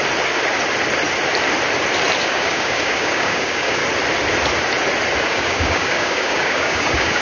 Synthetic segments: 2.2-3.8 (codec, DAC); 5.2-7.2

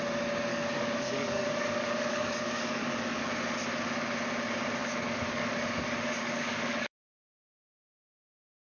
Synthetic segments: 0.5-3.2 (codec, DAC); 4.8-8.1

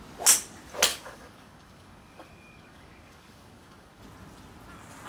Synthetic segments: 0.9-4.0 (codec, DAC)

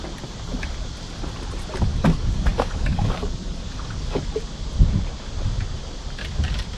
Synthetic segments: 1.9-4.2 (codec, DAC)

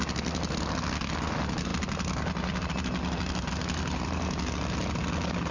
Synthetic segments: none

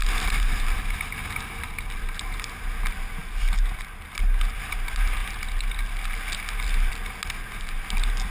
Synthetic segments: none

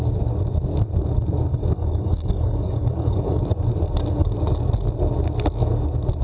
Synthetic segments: 1.5-3.4 (codec, DAC)